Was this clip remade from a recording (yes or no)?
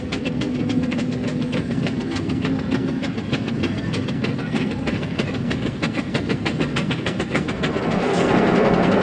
yes